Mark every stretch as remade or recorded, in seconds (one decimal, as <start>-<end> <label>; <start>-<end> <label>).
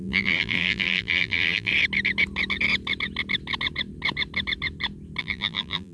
0.0-1.7 remade; 1.7-5.2 recorded; 5.2-5.9 remade